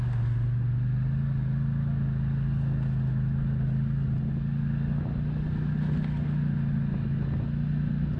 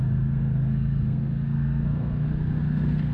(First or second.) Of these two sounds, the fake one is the second